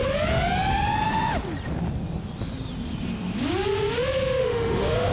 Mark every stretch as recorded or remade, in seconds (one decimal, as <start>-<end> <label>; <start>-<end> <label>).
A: 0.0-4.4 recorded; 4.4-5.1 remade